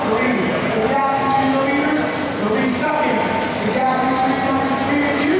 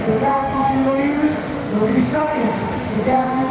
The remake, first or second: second